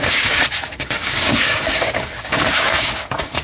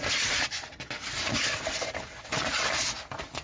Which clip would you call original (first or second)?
second